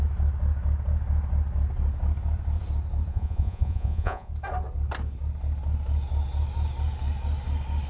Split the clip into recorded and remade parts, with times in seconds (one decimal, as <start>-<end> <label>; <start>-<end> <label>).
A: 0.0-3.1 recorded; 3.1-4.3 remade; 4.3-7.9 recorded